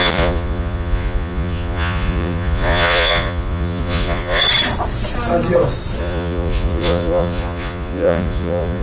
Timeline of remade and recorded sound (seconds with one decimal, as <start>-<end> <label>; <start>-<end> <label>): 0.0-4.4 remade; 4.4-6.0 recorded; 6.0-8.8 remade